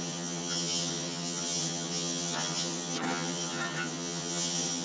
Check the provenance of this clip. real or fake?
fake